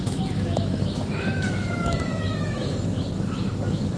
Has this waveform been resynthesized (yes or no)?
yes